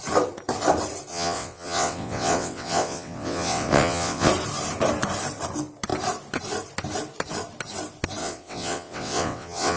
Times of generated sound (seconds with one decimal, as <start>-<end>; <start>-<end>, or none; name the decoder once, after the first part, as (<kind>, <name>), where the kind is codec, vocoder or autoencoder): 1.1-4.3 (vocoder, WaveNeXt); 8.2-9.8